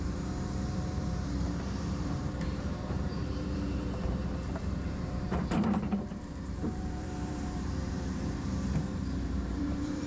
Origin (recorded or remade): remade